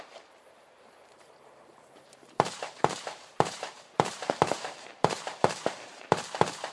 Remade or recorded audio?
remade